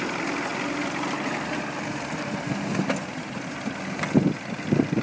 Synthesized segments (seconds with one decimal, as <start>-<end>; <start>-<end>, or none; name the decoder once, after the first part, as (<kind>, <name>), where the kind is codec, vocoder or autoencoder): none